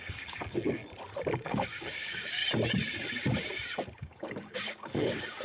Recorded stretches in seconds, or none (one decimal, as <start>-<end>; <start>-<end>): 0.8-1.3; 2.4-4.0